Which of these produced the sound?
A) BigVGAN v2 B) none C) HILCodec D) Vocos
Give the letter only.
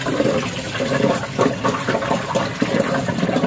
B